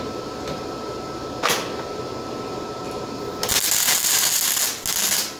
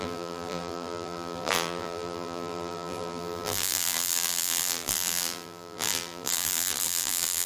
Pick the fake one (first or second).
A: second